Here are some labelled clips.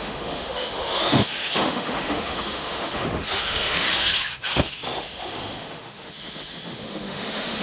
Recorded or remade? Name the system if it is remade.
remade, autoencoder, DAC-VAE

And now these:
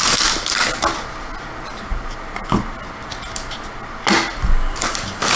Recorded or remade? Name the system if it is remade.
recorded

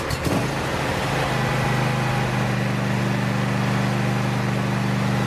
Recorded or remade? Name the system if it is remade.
recorded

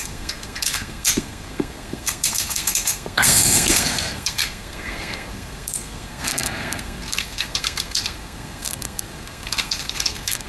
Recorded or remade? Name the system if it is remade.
remade, codec, SNAC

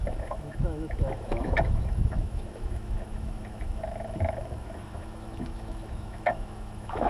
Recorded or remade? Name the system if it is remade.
remade, autoencoder, DAC-VAE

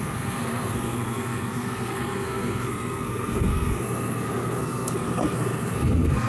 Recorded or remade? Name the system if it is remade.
remade, codec, SNAC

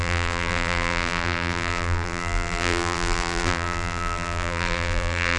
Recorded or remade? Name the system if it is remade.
remade, vocoder, BigVGAN v2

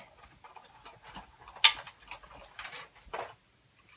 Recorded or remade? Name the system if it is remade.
recorded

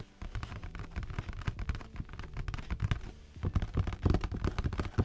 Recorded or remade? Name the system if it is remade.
recorded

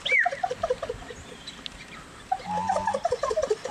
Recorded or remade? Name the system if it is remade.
recorded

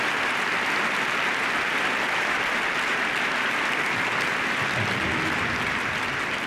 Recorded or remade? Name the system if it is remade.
recorded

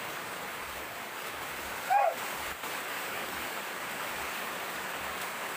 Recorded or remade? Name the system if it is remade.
remade, codec, DAC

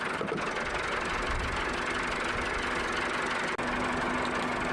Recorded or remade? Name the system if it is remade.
recorded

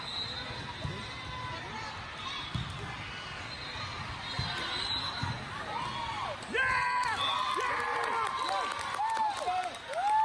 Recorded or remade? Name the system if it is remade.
recorded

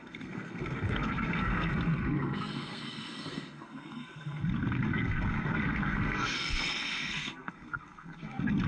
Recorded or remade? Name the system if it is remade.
remade, codec, SNAC